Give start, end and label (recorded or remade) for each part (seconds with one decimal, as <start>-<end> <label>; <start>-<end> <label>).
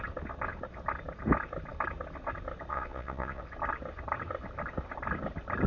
0.0-2.7 recorded; 2.7-3.4 remade; 3.4-5.7 recorded